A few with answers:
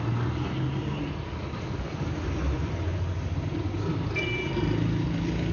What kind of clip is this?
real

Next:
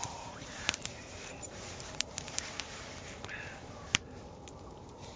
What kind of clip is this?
fake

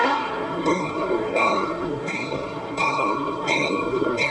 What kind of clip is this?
fake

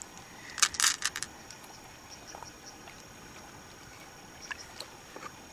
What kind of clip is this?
real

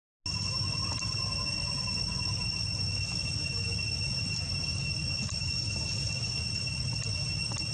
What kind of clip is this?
real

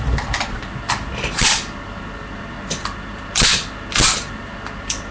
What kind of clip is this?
real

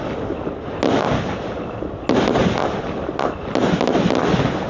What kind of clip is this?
real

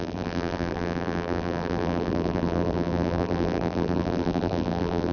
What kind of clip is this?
fake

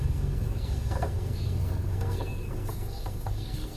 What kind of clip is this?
fake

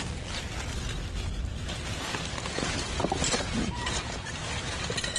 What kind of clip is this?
real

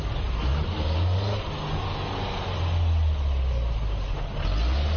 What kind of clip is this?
real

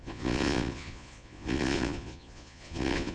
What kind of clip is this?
fake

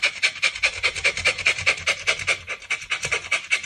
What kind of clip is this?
fake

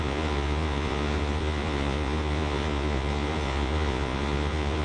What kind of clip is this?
fake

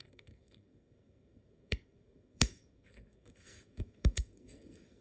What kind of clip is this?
fake